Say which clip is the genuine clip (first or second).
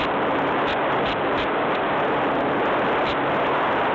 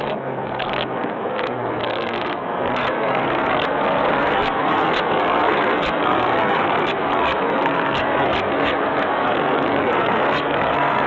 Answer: first